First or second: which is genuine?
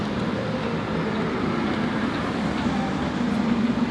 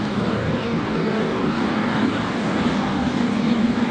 first